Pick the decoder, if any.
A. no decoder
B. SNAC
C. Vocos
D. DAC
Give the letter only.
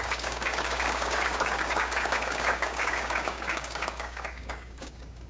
D